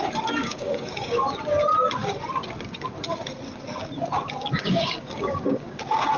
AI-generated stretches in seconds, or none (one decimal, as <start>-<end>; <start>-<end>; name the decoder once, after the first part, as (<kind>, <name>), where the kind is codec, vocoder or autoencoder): 0.4-1.2 (codec, DAC); 4.4-5.8